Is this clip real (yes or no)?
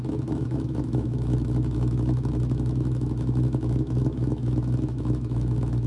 no